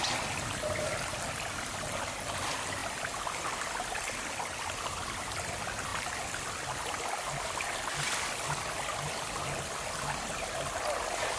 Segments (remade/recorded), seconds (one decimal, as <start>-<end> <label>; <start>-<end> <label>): 0.0-11.4 recorded